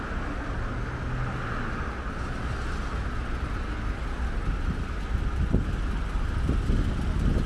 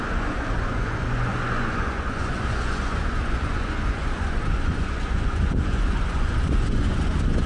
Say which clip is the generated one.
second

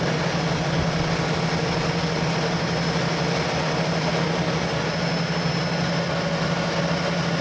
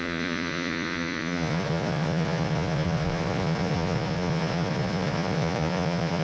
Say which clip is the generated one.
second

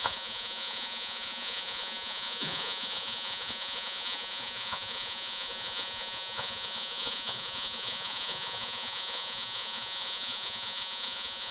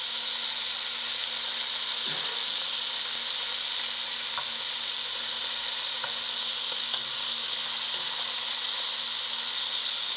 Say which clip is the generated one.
first